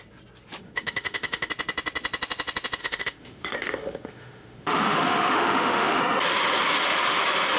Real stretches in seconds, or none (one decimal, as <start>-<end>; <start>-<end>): 0.0-0.6; 1.5-2.8; 6.0-7.6